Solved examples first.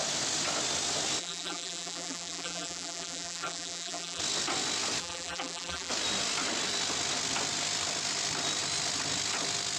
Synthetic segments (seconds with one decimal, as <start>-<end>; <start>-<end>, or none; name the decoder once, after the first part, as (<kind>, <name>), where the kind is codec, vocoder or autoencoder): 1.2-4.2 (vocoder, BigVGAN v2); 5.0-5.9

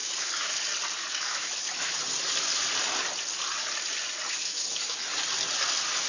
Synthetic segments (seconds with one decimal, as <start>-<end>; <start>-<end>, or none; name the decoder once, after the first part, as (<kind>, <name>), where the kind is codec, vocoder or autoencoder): 0.0-0.6 (autoencoder, DAC-VAE); 1.1-2.0; 4.4-5.1

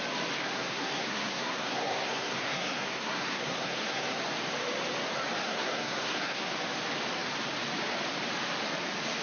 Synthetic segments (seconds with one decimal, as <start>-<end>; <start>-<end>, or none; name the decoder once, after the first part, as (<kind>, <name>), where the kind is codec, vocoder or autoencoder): 0.4-4.2 (codec, SNAC); 5.4-6.4

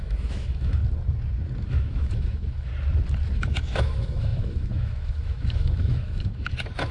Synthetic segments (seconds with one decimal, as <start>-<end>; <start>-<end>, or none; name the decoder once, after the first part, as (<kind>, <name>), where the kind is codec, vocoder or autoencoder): 0.0-0.8 (autoencoder, DAC-VAE); 1.6-2.7; 3.4-6.9

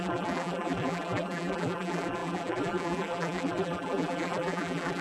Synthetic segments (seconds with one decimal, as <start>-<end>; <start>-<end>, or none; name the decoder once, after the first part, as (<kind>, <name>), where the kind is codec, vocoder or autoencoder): 0.0-5.0 (vocoder, BigVGAN v2)